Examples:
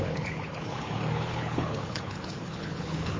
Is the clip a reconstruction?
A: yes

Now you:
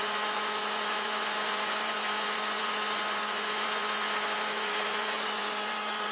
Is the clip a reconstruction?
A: yes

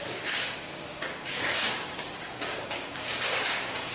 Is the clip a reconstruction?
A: yes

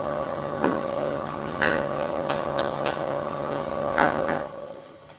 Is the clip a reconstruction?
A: yes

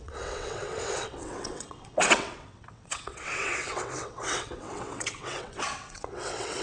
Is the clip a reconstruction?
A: yes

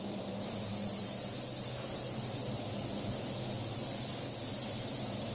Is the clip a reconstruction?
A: no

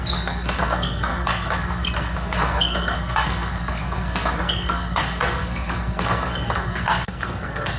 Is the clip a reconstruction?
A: yes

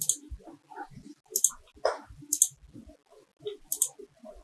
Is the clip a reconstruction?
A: no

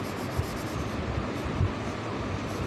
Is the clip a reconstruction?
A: no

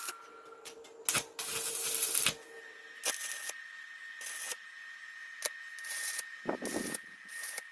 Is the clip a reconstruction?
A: no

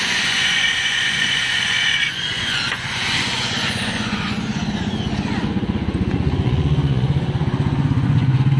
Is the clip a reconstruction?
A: yes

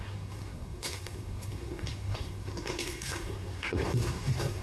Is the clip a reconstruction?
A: yes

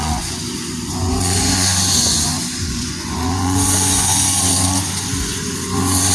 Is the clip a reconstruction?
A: yes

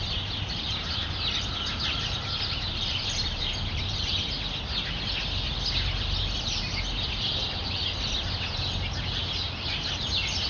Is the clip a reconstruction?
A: no